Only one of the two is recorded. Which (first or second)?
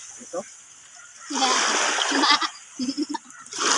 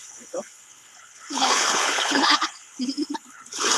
first